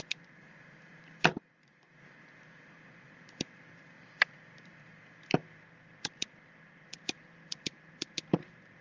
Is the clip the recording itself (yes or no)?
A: no